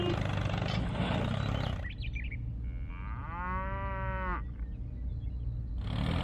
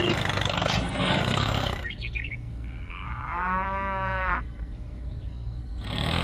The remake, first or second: second